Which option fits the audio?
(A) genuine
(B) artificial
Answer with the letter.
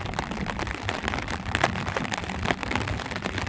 A